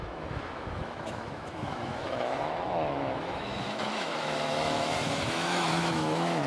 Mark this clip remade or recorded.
remade